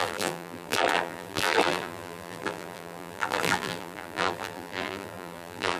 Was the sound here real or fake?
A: fake